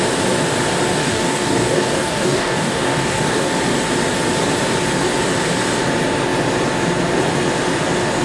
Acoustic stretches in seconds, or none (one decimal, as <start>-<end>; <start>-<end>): 0.0-1.0; 3.5-8.2